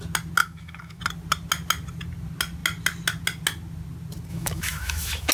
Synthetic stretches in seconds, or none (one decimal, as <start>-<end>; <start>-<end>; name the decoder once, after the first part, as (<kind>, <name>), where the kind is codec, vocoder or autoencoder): 0.4-1.0 (autoencoder, DAC-VAE); 4.3-5.3